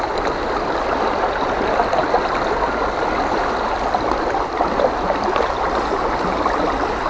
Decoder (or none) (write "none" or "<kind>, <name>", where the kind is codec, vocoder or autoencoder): none